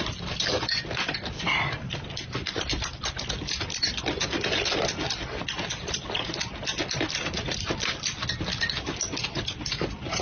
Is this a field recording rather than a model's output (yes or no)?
yes